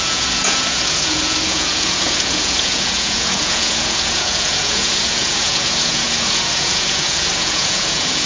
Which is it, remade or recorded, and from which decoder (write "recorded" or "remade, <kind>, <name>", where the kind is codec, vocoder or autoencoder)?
remade, vocoder, Vocos